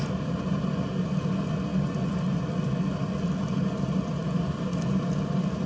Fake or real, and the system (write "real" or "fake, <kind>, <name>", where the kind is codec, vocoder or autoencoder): real